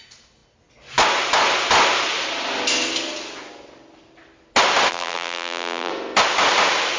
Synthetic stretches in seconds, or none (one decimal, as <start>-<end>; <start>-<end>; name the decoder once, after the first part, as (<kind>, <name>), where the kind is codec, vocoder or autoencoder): 4.9-5.9 (vocoder, BigVGAN v2)